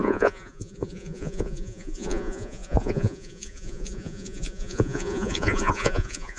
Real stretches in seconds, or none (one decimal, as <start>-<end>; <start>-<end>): none